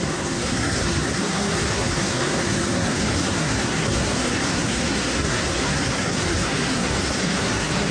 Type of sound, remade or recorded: remade